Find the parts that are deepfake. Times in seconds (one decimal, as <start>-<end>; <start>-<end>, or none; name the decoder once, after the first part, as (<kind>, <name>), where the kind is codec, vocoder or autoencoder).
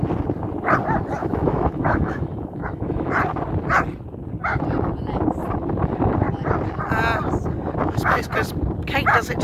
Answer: 1.2-3.1 (autoencoder, DAC-VAE); 7.8-8.3